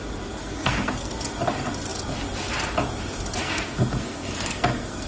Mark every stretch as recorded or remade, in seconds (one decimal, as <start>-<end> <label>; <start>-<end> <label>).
0.0-0.4 recorded; 0.4-1.1 remade; 1.1-3.4 recorded; 3.4-5.1 remade